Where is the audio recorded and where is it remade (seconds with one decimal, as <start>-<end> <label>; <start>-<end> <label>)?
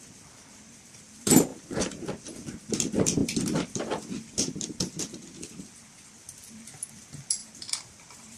0.0-7.4 recorded; 7.4-8.4 remade